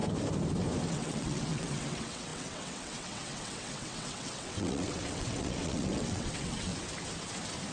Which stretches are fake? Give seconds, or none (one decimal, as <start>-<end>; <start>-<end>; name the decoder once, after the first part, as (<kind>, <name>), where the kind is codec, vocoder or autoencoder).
0.9-6.7 (vocoder, WaveNeXt)